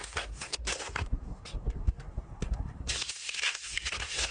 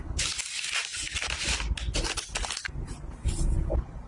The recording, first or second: second